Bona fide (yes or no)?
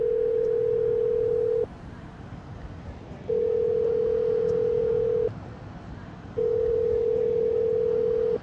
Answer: no